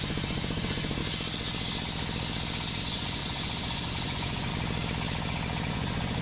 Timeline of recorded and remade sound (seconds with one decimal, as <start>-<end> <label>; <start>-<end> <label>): 0.0-1.0 remade; 1.0-2.8 recorded; 2.8-4.5 remade; 4.5-5.7 recorded; 5.7-6.2 remade